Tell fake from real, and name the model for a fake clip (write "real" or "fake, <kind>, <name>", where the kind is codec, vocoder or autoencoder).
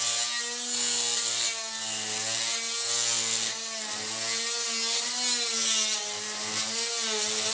real